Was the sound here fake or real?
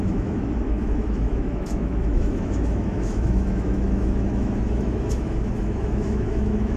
fake